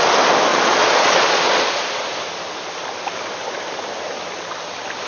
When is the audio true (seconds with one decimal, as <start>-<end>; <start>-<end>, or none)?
0.0-0.5; 1.8-5.1